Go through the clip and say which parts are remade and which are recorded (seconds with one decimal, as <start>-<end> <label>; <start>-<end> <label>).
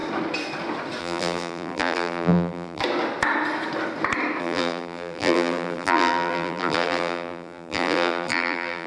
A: 0.0-1.0 recorded; 1.0-2.8 remade; 2.8-4.4 recorded; 4.4-8.9 remade